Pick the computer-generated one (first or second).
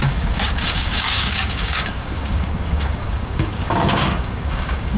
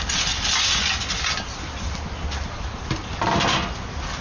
first